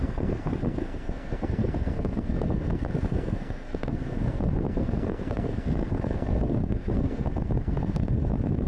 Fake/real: fake